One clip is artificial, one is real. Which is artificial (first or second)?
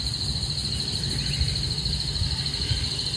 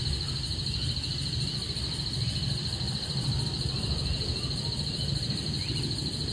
second